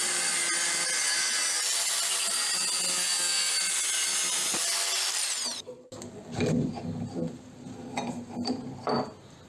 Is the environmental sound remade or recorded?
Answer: recorded